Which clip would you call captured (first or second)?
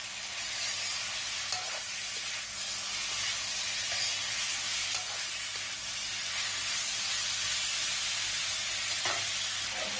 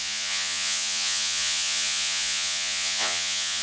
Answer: first